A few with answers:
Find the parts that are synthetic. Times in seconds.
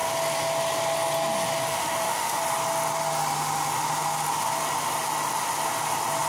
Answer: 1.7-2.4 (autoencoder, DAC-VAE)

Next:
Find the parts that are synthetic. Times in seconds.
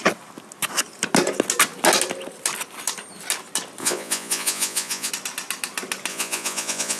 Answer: 3.8-5.1 (vocoder, Vocos); 6.1-7.0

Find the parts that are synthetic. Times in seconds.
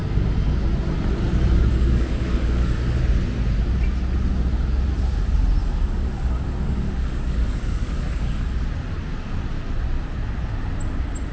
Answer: 1.7-3.0 (codec, DAC); 5.6-8.6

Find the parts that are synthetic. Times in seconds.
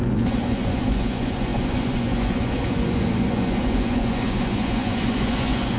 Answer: 0.0-5.8 (vocoder, Vocos)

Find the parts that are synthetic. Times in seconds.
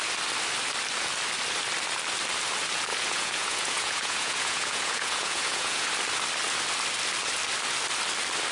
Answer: 2.9-5.9 (vocoder, Vocos)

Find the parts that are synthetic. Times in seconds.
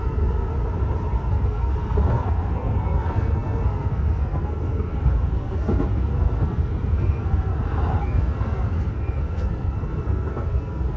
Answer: 0.0-0.5 (codec, SNAC); 1.3-7.5; 8.0-11.0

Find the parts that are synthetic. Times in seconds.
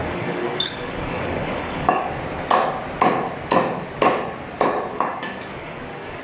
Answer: 0.0-2.1 (codec, DAC); 4.9-6.2